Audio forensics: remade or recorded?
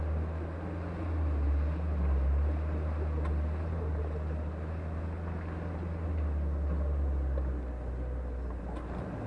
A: recorded